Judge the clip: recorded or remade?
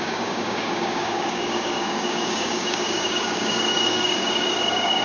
remade